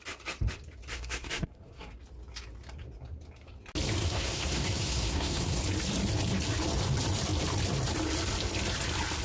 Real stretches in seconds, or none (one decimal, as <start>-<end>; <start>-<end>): 0.0-0.9; 1.9-4.0; 5.6-9.2